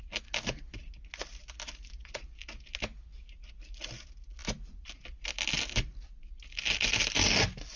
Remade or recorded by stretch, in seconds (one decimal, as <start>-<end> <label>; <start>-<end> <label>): 0.0-7.8 recorded

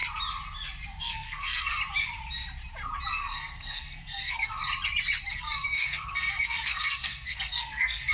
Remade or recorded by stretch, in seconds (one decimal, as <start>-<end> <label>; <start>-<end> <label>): 0.0-1.0 recorded; 1.0-1.8 remade; 1.8-3.1 recorded; 3.1-4.6 remade; 4.6-5.3 recorded; 5.3-8.1 remade

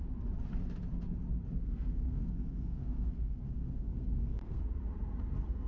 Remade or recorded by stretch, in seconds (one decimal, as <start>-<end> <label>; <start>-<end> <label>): 0.0-1.6 recorded; 1.6-4.6 remade; 4.6-5.7 recorded

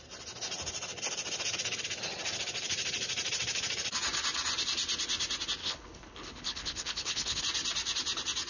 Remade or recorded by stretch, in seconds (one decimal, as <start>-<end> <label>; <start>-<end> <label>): 0.0-5.6 recorded; 5.6-7.4 remade; 7.4-8.5 recorded

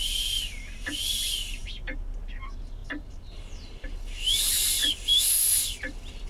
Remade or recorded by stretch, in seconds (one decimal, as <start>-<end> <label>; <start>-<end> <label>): 0.0-6.3 recorded

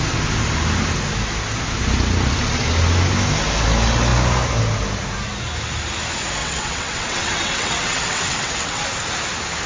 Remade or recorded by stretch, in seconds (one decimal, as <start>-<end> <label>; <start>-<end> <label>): 0.0-6.4 recorded; 6.4-8.8 remade; 8.8-9.7 recorded